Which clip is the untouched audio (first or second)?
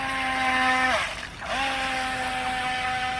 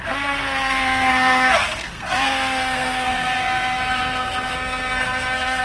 first